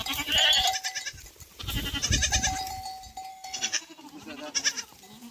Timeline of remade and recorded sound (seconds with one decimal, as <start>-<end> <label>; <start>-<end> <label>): 0.0-3.3 recorded; 3.3-4.0 remade; 4.0-5.3 recorded